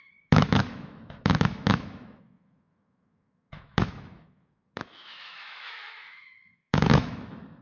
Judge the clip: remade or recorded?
remade